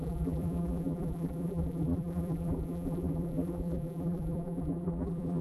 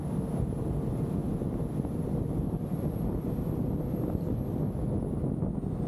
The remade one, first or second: first